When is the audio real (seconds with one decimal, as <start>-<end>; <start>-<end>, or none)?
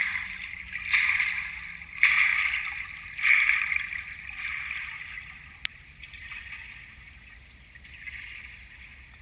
0.0-9.2